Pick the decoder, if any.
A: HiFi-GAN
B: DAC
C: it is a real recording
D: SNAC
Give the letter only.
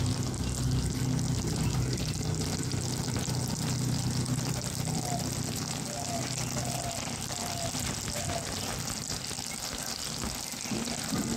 C